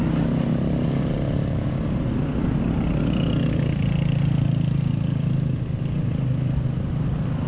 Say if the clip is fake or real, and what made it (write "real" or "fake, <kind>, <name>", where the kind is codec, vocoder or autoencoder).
real